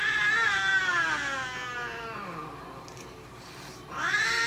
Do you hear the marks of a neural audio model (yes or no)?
no